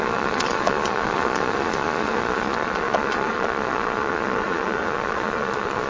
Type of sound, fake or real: fake